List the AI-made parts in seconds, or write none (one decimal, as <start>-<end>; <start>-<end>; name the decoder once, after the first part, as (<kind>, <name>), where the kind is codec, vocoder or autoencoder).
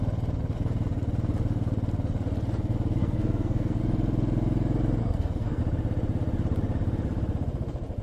3.0-3.8 (codec, SNAC); 5.0-5.6